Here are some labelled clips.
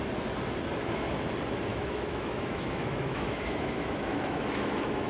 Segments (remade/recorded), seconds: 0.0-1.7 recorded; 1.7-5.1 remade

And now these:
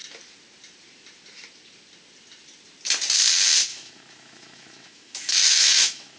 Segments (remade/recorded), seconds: 0.0-3.7 recorded; 3.7-6.2 remade

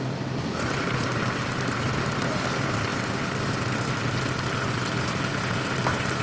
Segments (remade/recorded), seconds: 0.0-6.2 recorded

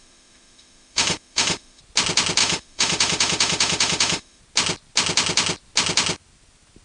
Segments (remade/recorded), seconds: 0.0-1.8 remade; 1.8-2.4 recorded; 2.4-4.4 remade; 4.4-6.8 recorded

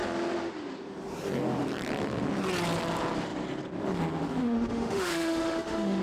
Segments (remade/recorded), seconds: 0.0-4.4 recorded; 4.4-6.0 remade

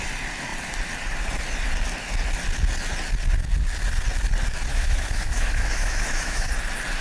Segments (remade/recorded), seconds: 0.0-4.7 recorded; 4.7-6.5 remade; 6.5-7.0 recorded

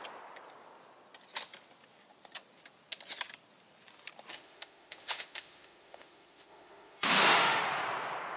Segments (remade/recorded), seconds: 0.0-4.3 recorded; 4.3-7.6 remade; 7.6-8.4 recorded